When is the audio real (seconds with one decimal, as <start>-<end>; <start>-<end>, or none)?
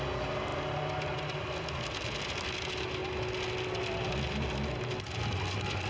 0.0-5.9